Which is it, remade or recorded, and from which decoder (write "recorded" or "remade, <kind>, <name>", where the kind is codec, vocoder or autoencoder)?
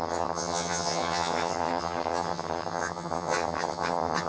remade, vocoder, HiFi-GAN